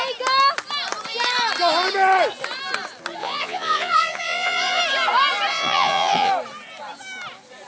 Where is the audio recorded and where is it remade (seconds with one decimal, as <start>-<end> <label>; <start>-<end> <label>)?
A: 0.0-3.2 recorded; 3.2-4.8 remade; 4.8-5.5 recorded; 5.5-6.3 remade; 6.3-7.7 recorded